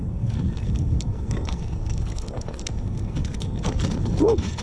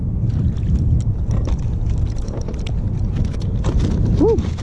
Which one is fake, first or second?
first